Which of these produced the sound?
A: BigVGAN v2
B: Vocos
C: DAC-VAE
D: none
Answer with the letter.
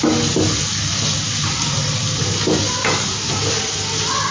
D